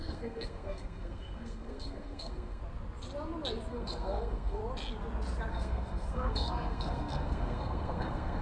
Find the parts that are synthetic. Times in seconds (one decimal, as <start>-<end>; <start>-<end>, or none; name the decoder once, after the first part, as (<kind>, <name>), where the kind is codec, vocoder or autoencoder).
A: 0.0-2.6 (codec, SNAC); 3.7-4.6; 5.5-8.4